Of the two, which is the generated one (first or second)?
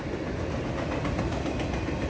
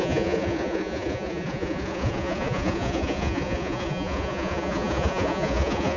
second